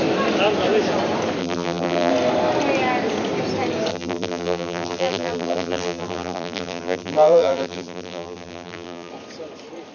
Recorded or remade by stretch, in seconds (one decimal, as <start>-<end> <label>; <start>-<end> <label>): 0.0-1.4 recorded; 1.4-2.1 remade; 2.1-3.9 recorded; 3.9-9.1 remade; 9.1-9.9 recorded